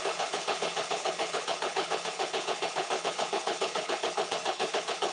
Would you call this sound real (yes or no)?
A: no